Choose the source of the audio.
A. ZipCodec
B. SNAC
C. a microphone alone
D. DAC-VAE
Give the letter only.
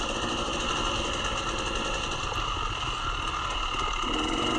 C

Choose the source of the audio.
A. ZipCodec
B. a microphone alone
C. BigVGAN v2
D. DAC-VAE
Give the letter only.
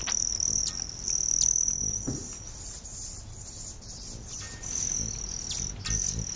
B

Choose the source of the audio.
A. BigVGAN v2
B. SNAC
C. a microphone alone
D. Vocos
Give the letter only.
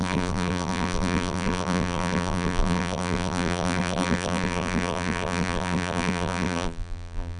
A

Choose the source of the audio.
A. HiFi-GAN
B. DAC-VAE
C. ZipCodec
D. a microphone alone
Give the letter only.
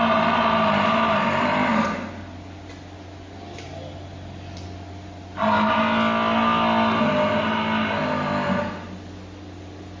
D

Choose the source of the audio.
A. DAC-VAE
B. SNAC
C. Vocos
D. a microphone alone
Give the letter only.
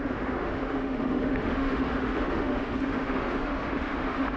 A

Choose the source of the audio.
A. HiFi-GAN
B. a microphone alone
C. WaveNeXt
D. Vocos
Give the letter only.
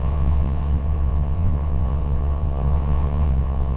C